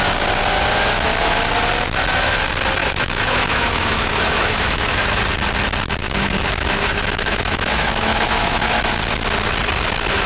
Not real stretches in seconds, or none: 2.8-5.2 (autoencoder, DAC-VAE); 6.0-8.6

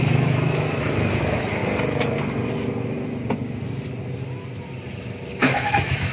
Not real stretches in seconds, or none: 0.0-1.6 (autoencoder, DAC-VAE); 5.3-6.1